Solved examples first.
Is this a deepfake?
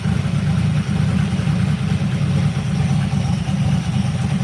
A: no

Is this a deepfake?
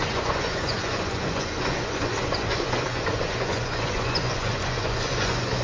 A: yes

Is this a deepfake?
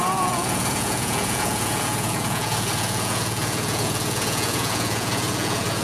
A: yes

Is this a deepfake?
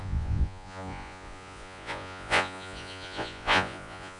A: yes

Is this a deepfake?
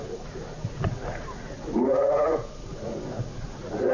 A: yes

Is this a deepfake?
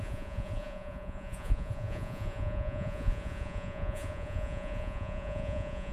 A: yes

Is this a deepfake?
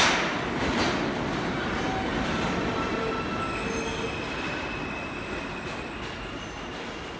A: no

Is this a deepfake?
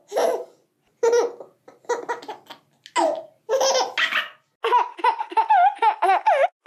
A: no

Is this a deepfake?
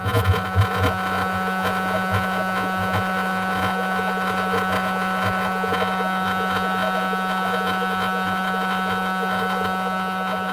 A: yes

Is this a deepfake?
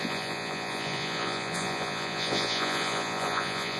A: yes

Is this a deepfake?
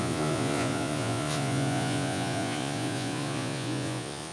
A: yes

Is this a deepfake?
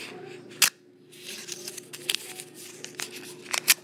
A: no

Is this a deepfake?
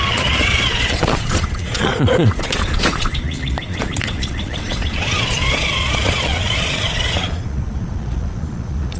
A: yes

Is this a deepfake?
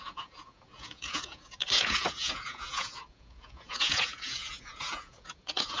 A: yes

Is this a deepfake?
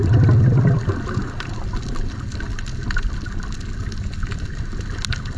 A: no